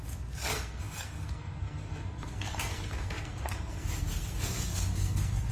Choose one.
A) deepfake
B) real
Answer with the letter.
A